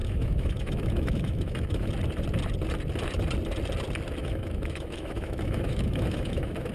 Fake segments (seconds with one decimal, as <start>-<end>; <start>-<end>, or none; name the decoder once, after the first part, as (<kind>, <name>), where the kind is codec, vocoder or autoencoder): 0.0-1.9 (autoencoder, DAC-VAE); 4.2-6.7